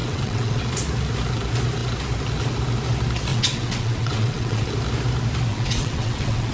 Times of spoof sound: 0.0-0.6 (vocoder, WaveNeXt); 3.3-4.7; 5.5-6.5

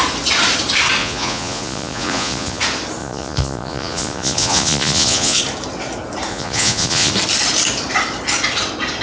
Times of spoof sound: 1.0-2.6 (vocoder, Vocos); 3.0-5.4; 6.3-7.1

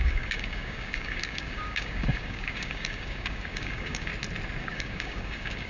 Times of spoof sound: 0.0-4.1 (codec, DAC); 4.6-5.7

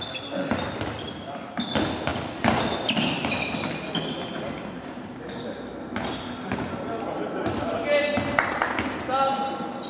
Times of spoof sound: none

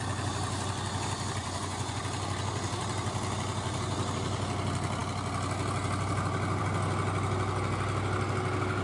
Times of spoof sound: 1.4-2.0 (vocoder, Vocos)

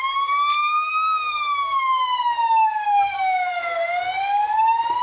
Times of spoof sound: 0.6-3.6 (codec, DAC)

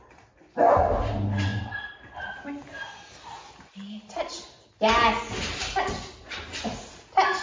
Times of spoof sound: none

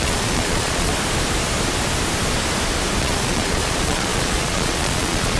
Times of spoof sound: 0.0-0.9 (vocoder, Vocos); 3.0-5.4